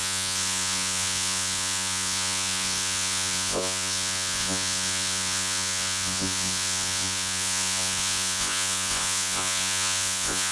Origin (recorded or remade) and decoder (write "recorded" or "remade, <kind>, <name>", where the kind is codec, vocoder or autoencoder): remade, vocoder, Vocos